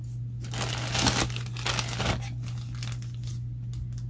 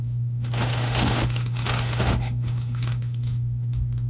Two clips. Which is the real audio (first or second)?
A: first